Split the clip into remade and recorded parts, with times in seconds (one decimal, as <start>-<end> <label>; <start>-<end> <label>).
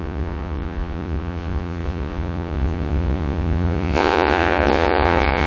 0.0-5.5 remade